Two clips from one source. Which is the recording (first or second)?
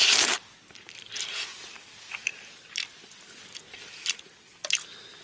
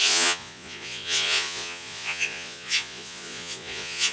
first